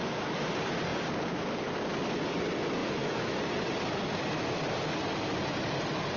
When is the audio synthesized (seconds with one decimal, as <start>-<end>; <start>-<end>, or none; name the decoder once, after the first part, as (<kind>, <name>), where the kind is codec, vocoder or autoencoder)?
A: 0.0-0.5 (autoencoder, DAC-VAE); 2.8-3.4